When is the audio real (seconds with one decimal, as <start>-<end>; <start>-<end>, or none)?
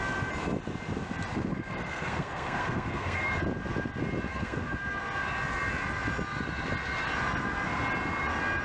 0.0-1.3; 3.3-4.3; 5.0-8.6